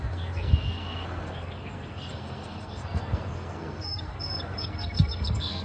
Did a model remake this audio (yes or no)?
yes